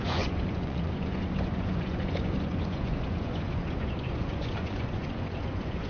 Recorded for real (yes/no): no